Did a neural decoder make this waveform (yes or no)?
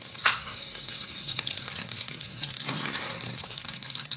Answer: yes